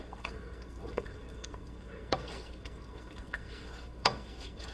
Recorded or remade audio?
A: remade